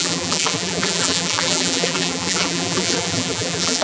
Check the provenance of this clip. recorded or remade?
remade